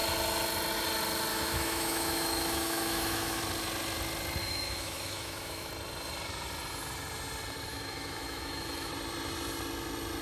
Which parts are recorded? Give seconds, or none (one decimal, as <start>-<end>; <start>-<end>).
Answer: 0.0-1.3; 3.4-4.4; 5.7-7.7; 8.9-10.2